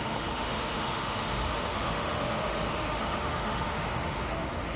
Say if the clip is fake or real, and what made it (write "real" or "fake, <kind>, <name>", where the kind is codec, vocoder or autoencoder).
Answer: fake, autoencoder, DAC-VAE